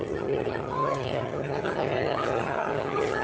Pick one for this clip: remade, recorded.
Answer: remade